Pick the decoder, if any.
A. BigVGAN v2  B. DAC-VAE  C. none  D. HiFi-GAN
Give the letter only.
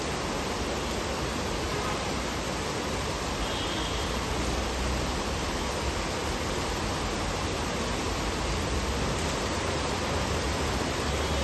C